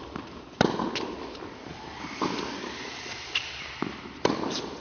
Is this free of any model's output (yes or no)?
no